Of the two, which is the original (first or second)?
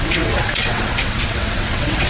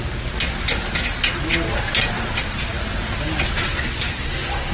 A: second